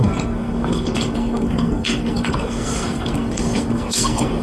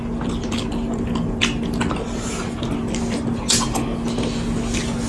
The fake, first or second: first